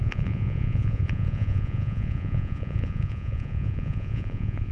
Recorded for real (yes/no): no